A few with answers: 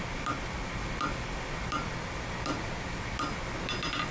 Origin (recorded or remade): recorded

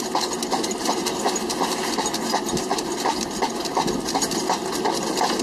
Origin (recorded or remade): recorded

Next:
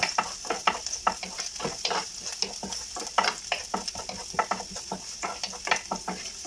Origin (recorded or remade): recorded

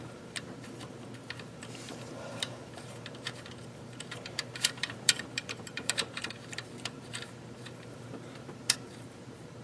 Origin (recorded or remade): remade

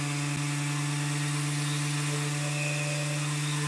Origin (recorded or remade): recorded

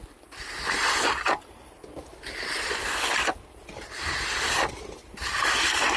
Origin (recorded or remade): recorded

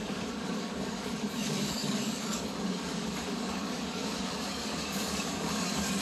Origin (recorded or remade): remade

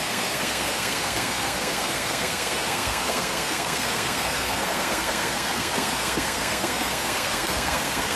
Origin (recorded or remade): remade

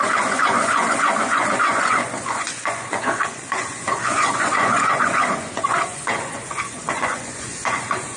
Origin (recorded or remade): remade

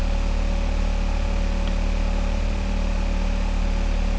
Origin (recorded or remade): recorded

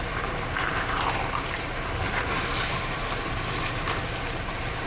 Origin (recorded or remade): remade